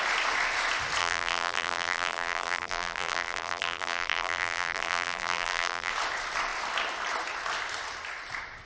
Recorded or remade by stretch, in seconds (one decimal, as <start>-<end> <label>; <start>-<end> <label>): 0.0-1.0 recorded; 1.0-5.9 remade; 5.9-8.7 recorded